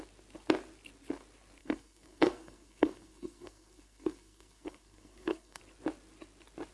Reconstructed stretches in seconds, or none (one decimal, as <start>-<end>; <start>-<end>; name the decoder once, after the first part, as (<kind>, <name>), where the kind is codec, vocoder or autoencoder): 1.6-5.6 (codec, SNAC)